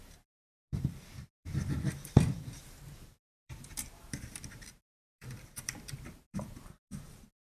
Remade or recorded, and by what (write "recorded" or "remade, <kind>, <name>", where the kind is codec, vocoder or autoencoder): remade, vocoder, BigVGAN v2